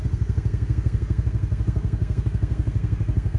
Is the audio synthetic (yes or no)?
yes